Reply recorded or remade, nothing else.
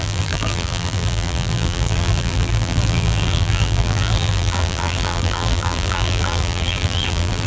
remade